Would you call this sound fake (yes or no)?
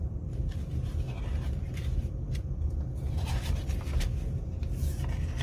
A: yes